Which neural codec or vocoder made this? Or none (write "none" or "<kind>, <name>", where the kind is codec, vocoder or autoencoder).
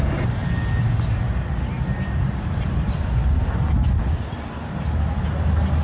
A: none